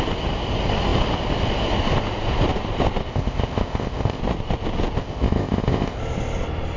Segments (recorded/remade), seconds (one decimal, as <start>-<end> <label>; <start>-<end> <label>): 0.0-3.1 recorded; 3.1-4.2 remade; 4.2-5.0 recorded; 5.0-6.0 remade; 6.0-6.8 recorded